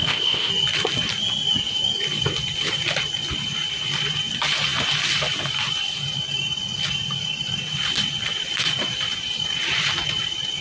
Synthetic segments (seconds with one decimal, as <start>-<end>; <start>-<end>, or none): 0.0-0.5